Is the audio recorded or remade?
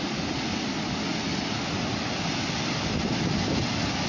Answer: recorded